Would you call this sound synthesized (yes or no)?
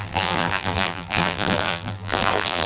yes